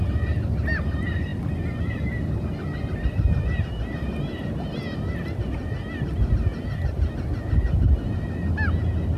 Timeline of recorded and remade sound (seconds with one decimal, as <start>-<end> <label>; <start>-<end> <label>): 0.0-9.2 recorded